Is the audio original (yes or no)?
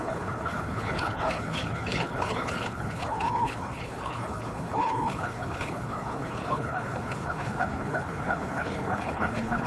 no